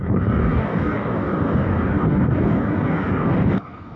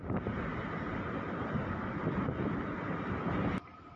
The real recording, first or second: second